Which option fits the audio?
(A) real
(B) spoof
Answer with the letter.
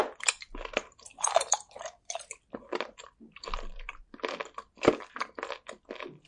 A